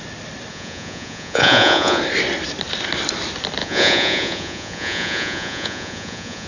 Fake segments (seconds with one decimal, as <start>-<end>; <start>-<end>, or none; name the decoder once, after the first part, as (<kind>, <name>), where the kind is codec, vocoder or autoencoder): 0.5-2.0 (vocoder, Vocos); 3.6-6.5

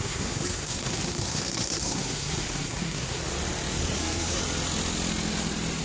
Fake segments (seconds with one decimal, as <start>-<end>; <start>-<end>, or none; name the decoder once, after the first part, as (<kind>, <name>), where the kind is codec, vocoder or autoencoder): 0.0-3.2 (codec, SNAC); 4.0-4.4

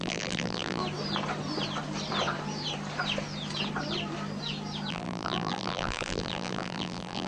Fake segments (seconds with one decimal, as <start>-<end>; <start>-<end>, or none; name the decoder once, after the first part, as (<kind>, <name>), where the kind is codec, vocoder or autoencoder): 0.0-0.8 (vocoder, BigVGAN v2); 4.9-7.3

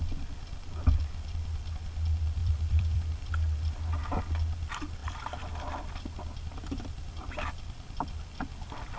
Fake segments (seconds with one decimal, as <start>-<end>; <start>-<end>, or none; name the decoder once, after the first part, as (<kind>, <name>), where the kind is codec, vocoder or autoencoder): 2.4-4.2 (vocoder, BigVGAN v2)

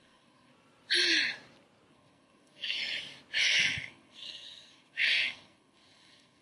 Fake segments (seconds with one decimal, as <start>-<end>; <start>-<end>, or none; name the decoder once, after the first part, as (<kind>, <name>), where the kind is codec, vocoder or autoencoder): 0.0-0.5 (codec, SNAC); 1.9-2.8; 3.4-6.4